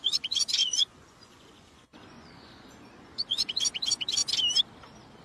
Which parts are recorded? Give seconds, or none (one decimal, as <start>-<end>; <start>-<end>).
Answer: 4.2-5.2